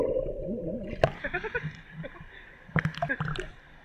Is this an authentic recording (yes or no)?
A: yes